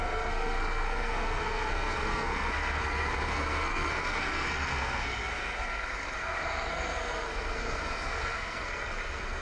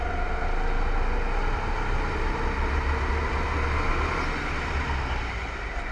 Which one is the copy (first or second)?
first